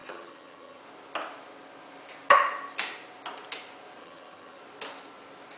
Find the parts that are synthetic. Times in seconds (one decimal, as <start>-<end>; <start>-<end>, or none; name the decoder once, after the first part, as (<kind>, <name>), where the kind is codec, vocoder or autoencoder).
0.0-0.8 (vocoder, HiFi-GAN); 4.0-4.6